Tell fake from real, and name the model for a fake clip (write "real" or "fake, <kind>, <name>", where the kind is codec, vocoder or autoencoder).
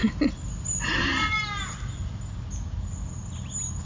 real